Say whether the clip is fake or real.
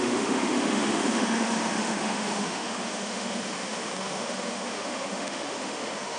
fake